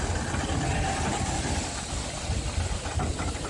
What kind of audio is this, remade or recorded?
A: recorded